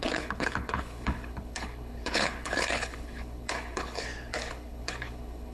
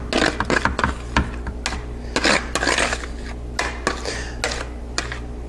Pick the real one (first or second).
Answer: second